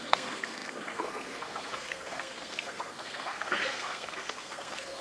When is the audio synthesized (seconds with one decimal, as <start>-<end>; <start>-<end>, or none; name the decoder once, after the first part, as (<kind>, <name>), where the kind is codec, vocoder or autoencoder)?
0.0-5.0 (codec, SNAC)